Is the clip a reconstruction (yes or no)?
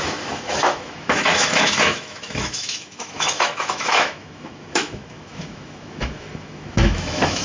yes